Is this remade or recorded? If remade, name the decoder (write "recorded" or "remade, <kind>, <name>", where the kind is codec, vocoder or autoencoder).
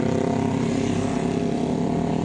recorded